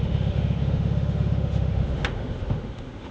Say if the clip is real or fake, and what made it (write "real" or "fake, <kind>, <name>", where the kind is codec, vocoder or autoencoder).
fake, autoencoder, DAC-VAE